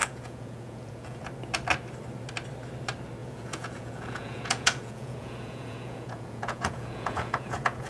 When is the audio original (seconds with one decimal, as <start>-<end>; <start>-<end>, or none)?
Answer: 1.2-3.2